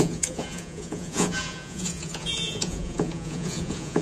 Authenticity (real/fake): fake